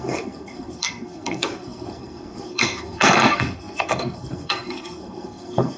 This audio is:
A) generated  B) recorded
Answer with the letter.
A